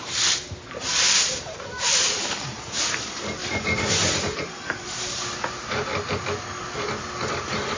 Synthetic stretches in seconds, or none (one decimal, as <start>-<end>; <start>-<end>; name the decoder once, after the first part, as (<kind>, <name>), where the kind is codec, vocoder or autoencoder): 0.0-5.9 (vocoder, BigVGAN v2); 7.0-7.8